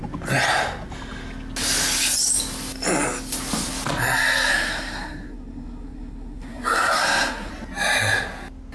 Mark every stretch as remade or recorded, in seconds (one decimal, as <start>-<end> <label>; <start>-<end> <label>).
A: 0.0-4.5 recorded; 4.5-7.5 remade; 7.5-8.7 recorded